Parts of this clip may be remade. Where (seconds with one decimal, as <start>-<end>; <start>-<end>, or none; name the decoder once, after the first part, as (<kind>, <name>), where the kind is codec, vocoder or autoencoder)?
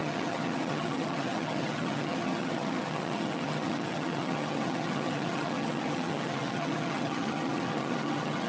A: 0.0-8.5 (vocoder, HiFi-GAN)